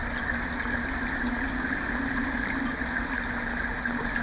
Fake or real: real